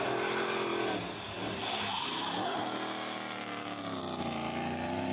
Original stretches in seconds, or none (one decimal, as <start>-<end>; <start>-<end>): 0.0-5.1